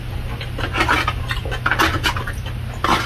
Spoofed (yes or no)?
no